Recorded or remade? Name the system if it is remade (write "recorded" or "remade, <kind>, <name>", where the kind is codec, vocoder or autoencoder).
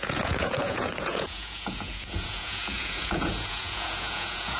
remade, vocoder, Vocos